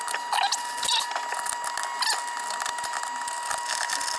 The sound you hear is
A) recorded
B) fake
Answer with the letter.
A